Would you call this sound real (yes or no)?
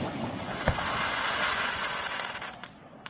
no